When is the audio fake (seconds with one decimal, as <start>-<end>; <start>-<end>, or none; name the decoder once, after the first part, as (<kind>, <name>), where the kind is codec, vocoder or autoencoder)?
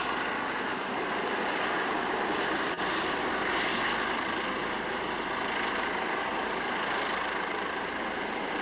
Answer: 0.7-2.4 (vocoder, BigVGAN v2)